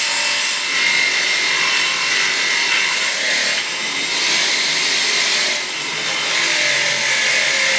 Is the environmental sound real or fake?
real